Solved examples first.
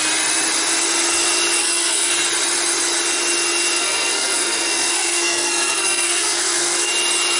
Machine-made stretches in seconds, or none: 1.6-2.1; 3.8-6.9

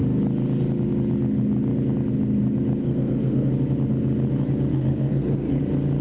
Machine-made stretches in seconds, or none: 2.8-3.5; 4.7-5.6

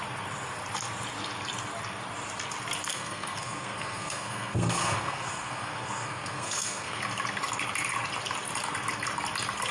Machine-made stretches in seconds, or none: 2.9-7.0

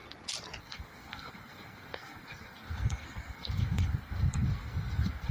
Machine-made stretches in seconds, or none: 0.6-5.3

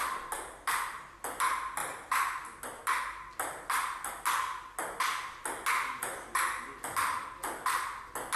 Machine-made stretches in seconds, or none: none

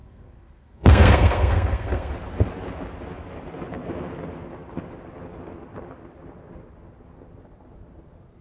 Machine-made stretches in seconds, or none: 0.0-2.1

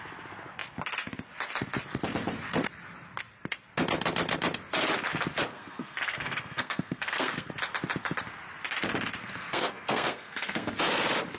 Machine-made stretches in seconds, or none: 5.5-7.5; 9.2-10.7